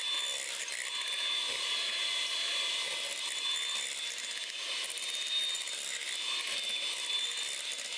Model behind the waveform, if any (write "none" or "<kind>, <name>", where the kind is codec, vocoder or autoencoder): none